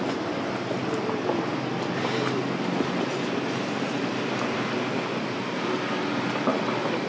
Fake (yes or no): no